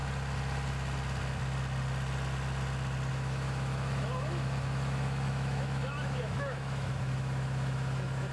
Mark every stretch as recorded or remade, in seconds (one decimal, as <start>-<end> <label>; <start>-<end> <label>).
0.0-3.1 recorded; 3.1-8.3 remade